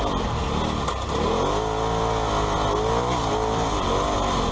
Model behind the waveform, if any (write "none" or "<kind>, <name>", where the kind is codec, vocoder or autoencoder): none